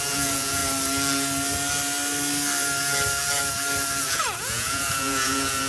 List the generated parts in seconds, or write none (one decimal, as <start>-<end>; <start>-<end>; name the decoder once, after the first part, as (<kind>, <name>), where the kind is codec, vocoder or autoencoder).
0.0-0.6 (vocoder, Vocos); 4.0-5.7